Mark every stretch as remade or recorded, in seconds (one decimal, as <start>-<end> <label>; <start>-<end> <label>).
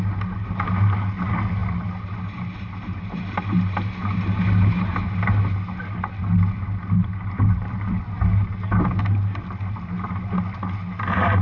0.0-11.4 recorded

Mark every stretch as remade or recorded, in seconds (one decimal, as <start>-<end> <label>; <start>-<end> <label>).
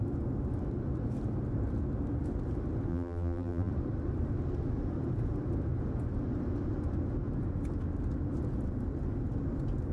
0.0-2.9 recorded; 2.9-3.7 remade; 3.7-9.9 recorded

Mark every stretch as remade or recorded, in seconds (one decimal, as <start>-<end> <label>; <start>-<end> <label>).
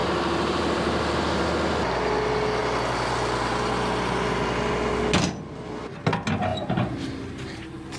0.0-1.4 remade; 1.4-6.5 recorded; 6.5-7.1 remade; 7.1-8.0 recorded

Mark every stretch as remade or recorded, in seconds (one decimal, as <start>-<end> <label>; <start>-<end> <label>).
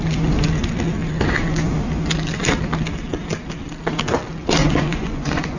0.0-4.6 recorded; 4.6-5.6 remade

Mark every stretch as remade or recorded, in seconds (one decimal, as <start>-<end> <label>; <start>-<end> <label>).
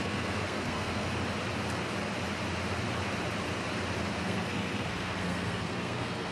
0.0-1.1 remade; 1.1-4.2 recorded; 4.2-6.3 remade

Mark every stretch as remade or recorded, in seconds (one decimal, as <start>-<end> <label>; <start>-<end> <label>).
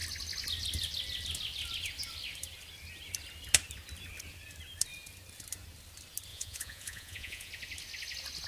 0.0-6.3 recorded; 6.3-7.5 remade; 7.5-8.5 recorded